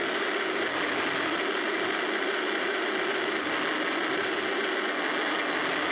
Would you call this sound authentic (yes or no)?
yes